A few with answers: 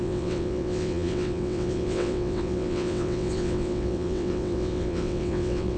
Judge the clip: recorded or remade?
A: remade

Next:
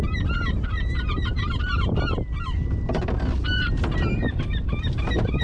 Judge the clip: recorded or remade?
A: recorded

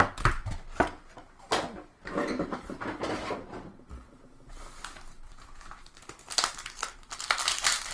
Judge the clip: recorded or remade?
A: recorded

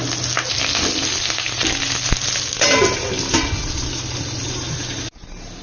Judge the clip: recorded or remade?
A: recorded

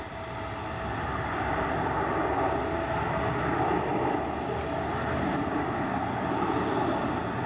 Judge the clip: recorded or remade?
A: recorded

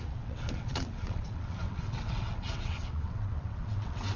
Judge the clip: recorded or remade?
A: remade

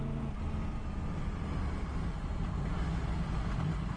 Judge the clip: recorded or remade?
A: recorded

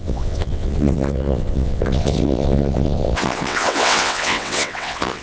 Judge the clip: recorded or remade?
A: remade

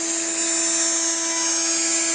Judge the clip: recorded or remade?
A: recorded